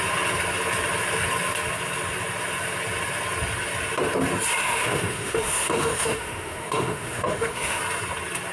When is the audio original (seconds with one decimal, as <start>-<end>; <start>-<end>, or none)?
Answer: 0.0-4.6; 7.8-8.5